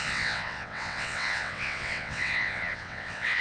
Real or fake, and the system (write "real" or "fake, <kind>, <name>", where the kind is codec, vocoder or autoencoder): fake, vocoder, WaveNeXt